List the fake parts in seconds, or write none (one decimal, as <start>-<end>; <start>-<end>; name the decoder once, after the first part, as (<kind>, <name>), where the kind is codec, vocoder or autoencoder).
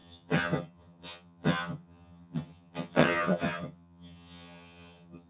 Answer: 0.0-5.3 (vocoder, HiFi-GAN)